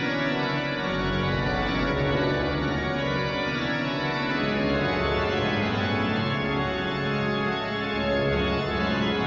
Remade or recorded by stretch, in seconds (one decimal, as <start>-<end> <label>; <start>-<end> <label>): 0.0-9.3 recorded